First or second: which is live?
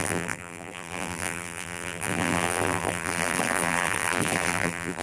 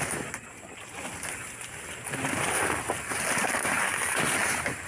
second